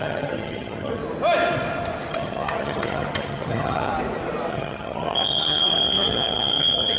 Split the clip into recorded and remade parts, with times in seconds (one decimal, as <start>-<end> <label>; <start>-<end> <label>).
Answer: 0.0-1.0 remade; 1.0-2.1 recorded; 2.1-3.9 remade; 3.9-4.5 recorded; 4.5-7.0 remade